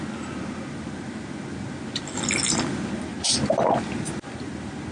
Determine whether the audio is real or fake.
real